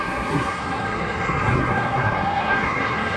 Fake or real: fake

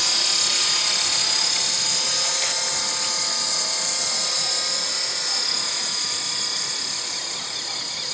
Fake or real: real